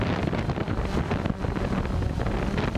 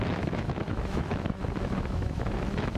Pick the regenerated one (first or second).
second